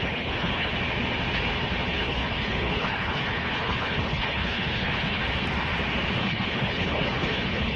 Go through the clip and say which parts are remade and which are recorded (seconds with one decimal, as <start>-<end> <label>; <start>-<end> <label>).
0.0-0.7 remade; 0.7-1.9 recorded; 1.9-5.2 remade; 5.2-6.2 recorded; 6.2-7.8 remade